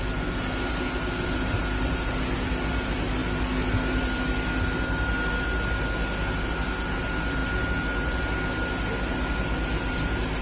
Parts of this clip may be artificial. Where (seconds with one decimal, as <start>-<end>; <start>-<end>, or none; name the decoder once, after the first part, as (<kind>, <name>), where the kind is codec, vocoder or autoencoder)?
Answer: none